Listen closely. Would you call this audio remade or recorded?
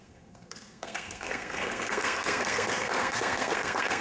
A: remade